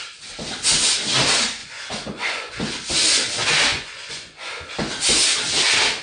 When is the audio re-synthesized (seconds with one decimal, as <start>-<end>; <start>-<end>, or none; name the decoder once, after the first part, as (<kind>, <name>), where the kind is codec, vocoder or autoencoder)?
1.6-2.6 (vocoder, Vocos); 3.7-4.5